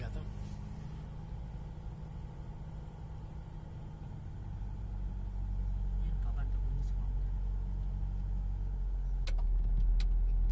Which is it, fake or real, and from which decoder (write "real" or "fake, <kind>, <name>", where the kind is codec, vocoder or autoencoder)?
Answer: real